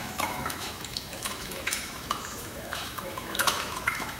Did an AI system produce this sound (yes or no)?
yes